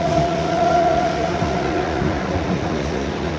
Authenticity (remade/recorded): remade